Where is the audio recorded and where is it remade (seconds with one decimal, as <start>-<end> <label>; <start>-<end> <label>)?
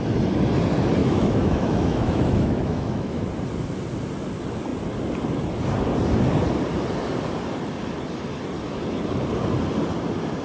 0.0-1.0 recorded; 1.0-3.2 remade; 3.2-10.4 recorded